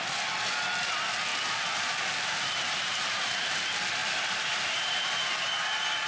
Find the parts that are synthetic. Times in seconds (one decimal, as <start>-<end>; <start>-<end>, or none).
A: 1.3-3.5; 4.0-6.1